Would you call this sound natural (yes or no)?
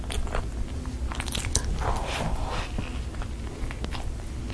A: yes